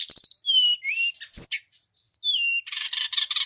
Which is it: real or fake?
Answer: real